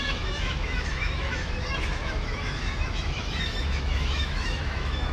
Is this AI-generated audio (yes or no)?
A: yes